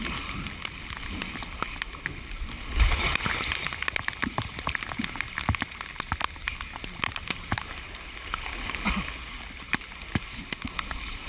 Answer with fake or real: real